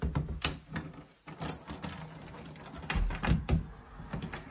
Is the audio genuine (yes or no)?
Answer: yes